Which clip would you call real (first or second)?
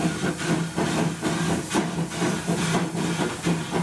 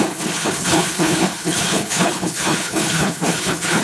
first